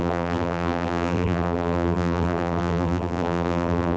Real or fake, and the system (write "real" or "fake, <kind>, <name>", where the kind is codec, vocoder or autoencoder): fake, vocoder, BigVGAN v2